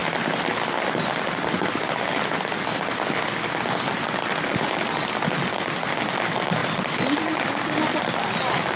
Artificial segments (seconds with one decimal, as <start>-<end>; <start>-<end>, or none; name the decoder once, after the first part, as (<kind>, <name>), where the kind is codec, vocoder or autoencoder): none